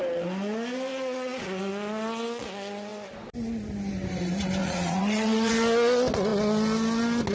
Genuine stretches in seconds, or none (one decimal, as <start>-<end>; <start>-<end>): 0.0-0.9; 1.6-4.6; 5.5-7.3